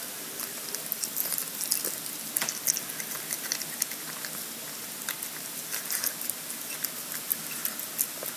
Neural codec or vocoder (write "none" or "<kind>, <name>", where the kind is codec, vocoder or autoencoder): none